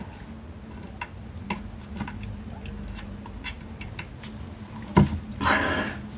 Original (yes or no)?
yes